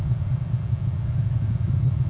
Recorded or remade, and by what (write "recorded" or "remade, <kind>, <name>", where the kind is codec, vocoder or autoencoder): recorded